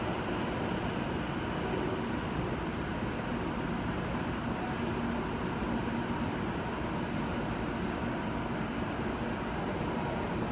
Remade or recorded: recorded